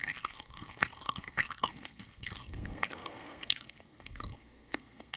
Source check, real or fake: fake